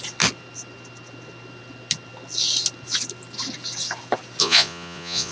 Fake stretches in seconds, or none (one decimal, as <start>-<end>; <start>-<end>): 4.4-5.3